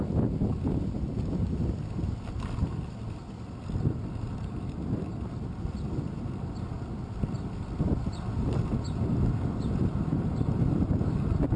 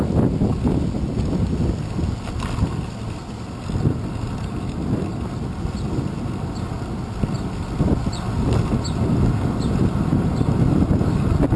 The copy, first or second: first